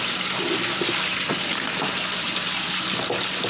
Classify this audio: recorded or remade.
recorded